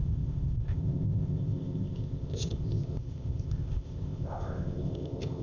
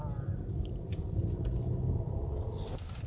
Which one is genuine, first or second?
second